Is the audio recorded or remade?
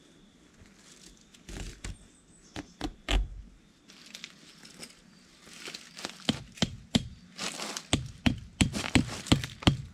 recorded